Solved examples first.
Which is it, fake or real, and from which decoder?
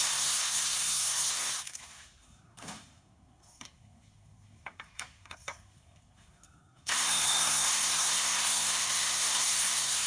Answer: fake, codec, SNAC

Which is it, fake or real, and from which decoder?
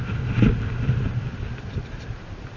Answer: real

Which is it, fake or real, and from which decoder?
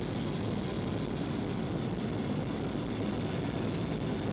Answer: real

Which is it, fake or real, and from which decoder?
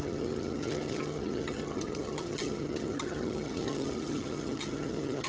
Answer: fake, vocoder, HiFi-GAN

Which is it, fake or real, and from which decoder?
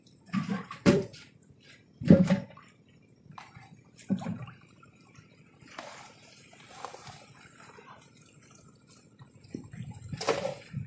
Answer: fake, vocoder, BigVGAN v2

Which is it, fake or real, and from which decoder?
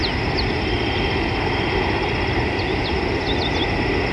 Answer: real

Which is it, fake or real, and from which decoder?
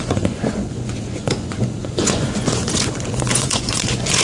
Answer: fake, vocoder, Vocos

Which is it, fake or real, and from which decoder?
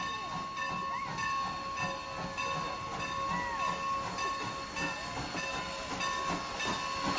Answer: real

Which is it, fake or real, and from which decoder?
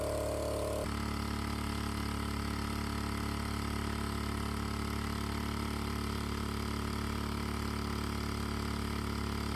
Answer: real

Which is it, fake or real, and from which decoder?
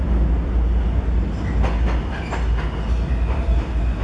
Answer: real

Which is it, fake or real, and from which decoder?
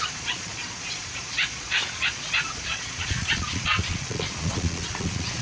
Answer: fake, vocoder, Vocos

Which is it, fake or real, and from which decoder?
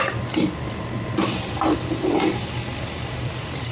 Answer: fake, vocoder, BigVGAN v2